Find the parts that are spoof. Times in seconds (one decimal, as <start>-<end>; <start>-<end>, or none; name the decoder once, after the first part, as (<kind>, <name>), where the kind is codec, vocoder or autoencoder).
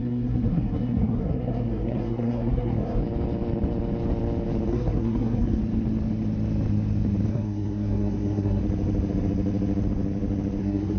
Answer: 0.0-3.0 (codec, SNAC); 4.7-5.6; 7.3-8.6; 10.6-11.0